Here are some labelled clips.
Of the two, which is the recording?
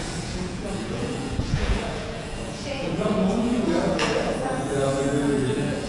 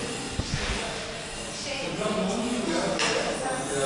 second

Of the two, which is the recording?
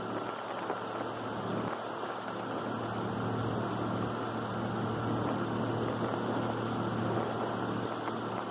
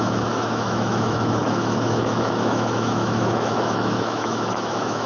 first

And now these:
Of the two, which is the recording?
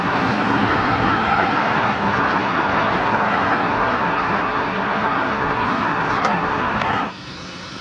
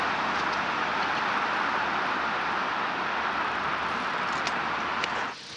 second